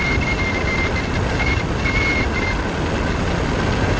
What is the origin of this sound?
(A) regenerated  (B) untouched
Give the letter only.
B